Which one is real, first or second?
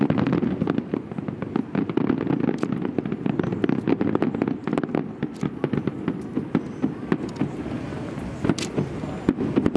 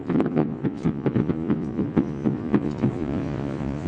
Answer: first